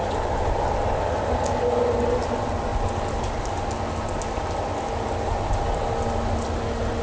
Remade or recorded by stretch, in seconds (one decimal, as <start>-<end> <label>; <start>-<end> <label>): 0.0-7.0 recorded